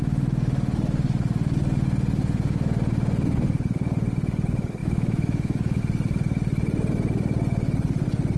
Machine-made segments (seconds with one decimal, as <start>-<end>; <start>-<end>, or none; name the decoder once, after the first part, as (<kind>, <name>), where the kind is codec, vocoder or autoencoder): 4.8-5.8 (autoencoder, DAC-VAE)